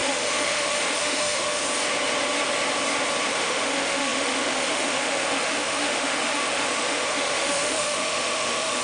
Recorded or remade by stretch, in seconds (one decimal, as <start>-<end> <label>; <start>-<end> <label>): 0.0-1.6 remade; 1.6-3.3 recorded; 3.3-8.8 remade